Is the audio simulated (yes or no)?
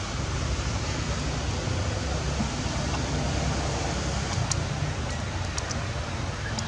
no